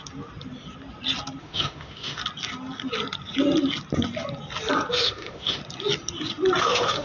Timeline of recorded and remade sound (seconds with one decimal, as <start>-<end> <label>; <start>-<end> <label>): 0.0-1.4 recorded; 1.4-2.2 remade; 2.2-4.9 recorded; 4.9-5.6 remade; 5.6-6.6 recorded; 6.6-7.0 remade